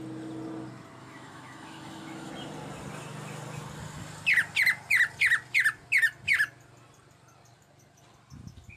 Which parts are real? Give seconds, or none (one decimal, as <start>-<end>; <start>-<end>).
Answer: 0.0-1.0; 2.3-8.8